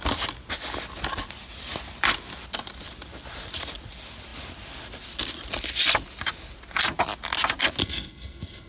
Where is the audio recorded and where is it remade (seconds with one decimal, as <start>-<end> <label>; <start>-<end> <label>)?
0.0-7.8 recorded; 7.8-8.7 remade